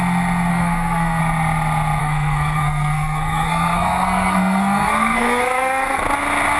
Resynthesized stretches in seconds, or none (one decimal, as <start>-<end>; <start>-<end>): 0.5-1.2; 2.0-6.0